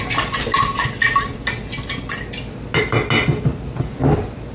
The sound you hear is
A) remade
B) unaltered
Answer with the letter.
B